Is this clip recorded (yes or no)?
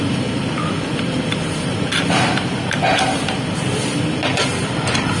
yes